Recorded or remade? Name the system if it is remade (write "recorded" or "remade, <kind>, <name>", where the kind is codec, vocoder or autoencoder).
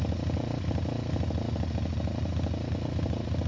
recorded